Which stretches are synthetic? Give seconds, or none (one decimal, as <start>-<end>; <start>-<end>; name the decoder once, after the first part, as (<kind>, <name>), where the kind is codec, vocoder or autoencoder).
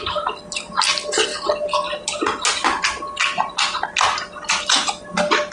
none